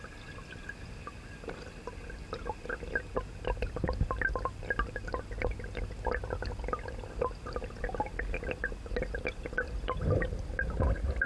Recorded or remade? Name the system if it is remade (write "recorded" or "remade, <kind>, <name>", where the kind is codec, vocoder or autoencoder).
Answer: recorded